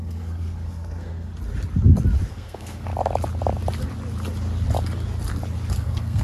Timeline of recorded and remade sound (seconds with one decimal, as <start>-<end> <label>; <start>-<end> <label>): 0.0-1.3 remade; 1.3-2.3 recorded; 2.3-2.9 remade; 2.9-5.8 recorded; 5.8-6.2 remade